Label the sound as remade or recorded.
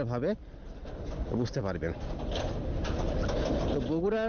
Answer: recorded